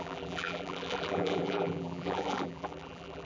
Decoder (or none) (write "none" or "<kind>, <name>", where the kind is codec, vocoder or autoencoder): vocoder, BigVGAN v2